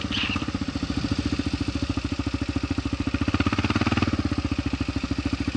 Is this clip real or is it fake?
fake